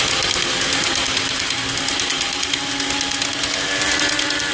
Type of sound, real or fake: real